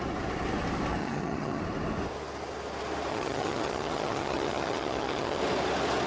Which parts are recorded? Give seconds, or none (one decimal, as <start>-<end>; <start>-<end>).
0.0-1.0; 1.6-3.1; 5.4-6.1